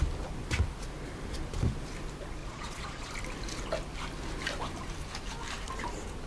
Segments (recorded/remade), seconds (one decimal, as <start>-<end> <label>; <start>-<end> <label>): 0.0-2.4 recorded; 2.4-3.1 remade; 3.1-6.3 recorded